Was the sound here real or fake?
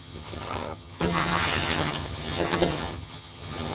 fake